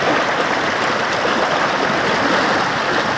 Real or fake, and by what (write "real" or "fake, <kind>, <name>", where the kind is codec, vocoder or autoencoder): real